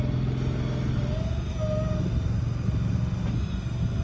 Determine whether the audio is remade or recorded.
recorded